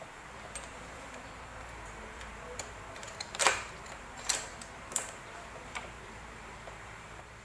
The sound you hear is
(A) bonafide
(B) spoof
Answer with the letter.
B